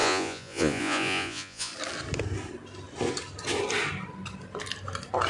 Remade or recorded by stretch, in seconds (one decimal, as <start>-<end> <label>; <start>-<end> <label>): 0.0-1.7 remade; 1.7-5.3 recorded